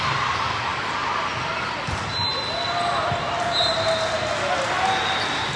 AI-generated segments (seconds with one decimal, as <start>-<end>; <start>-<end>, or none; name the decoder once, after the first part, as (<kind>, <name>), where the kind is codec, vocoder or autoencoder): none